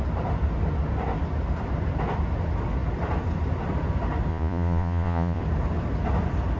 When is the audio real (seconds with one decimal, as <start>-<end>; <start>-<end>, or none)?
0.0-4.3; 5.4-6.6